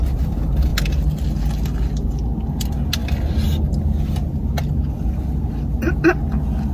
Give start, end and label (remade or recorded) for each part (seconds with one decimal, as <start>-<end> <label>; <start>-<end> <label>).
0.0-6.7 recorded